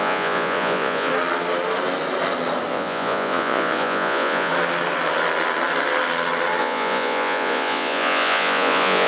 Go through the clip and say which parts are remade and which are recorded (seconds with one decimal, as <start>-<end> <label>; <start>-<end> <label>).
0.0-1.1 remade; 1.1-2.7 recorded; 2.7-4.5 remade; 4.5-6.6 recorded; 6.6-9.1 remade

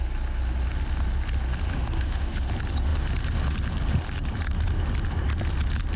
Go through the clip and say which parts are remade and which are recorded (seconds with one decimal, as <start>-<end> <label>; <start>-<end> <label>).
0.0-1.7 recorded; 1.7-2.4 remade; 2.4-6.0 recorded

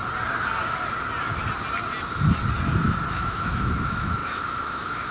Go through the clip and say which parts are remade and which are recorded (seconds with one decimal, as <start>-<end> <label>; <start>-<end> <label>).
0.0-3.1 recorded; 3.1-5.1 remade

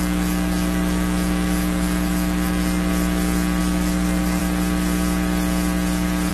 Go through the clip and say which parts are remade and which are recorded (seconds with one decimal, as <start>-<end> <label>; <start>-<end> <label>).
0.0-2.9 remade; 2.9-3.6 recorded; 3.6-4.4 remade; 4.4-6.3 recorded

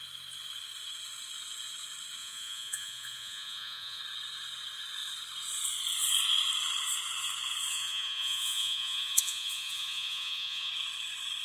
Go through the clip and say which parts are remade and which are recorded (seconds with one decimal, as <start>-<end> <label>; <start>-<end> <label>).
0.0-2.2 recorded; 2.2-4.0 remade; 4.0-7.7 recorded; 7.7-10.7 remade; 10.7-11.4 recorded

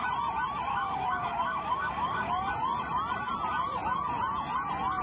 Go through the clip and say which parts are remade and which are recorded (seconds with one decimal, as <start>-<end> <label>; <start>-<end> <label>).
0.0-0.7 recorded; 0.7-2.3 remade; 2.3-5.0 recorded

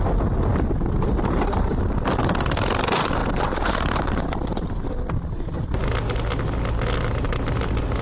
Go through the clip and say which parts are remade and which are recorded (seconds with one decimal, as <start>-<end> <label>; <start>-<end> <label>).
0.0-3.2 recorded; 3.2-4.1 remade; 4.1-4.5 recorded; 4.5-5.5 remade; 5.5-8.0 recorded